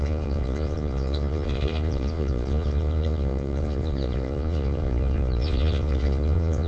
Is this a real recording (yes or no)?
no